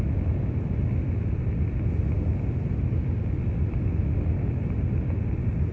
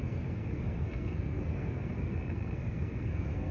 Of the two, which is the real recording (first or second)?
first